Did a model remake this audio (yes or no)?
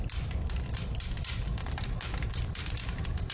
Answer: no